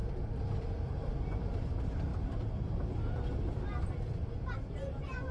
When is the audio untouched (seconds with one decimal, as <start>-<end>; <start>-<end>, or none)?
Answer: 0.0-5.3